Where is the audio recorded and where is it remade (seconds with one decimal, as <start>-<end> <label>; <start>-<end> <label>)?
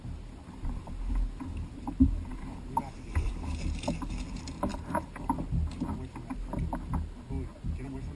0.0-2.3 recorded; 2.3-3.3 remade; 3.3-8.2 recorded